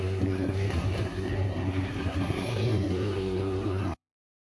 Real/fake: fake